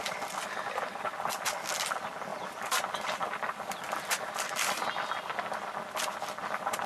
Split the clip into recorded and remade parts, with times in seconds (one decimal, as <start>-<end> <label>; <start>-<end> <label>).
0.0-2.3 recorded; 2.3-5.2 remade; 5.2-6.9 recorded